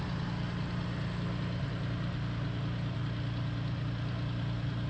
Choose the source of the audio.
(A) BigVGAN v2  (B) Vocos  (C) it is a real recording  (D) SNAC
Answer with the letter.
C